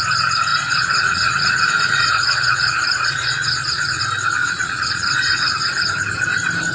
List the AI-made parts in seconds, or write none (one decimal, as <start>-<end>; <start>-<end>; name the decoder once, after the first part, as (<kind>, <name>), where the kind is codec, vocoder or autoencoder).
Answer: 0.5-4.0 (vocoder, Vocos); 4.4-5.5